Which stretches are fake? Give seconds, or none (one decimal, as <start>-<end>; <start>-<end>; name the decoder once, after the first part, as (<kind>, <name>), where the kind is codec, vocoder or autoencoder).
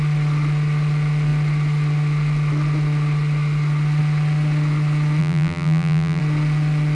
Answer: 5.2-6.2 (vocoder, BigVGAN v2)